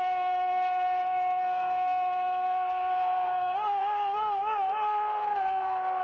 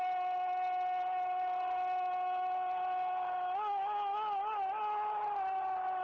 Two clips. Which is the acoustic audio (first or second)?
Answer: second